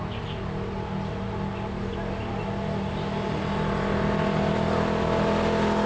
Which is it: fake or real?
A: real